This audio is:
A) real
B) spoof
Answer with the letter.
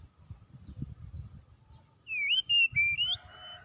A